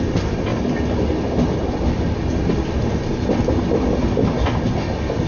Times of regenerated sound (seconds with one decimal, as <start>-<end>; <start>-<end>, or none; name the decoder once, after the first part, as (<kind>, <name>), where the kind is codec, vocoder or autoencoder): 0.0-0.5 (vocoder, BigVGAN v2); 3.7-5.3